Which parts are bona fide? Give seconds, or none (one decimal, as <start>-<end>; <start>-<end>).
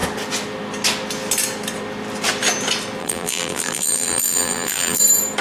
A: 0.0-3.0; 5.0-5.4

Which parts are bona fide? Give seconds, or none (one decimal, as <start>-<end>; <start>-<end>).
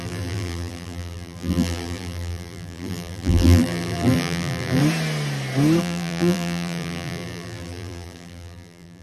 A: 4.8-5.8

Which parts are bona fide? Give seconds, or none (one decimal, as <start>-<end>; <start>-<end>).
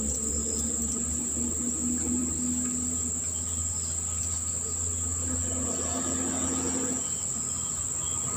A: 0.0-8.4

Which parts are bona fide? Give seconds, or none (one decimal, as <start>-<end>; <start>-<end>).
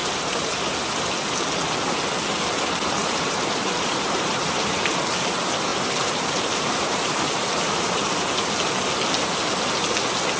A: 0.5-3.0; 5.0-5.7; 8.5-10.4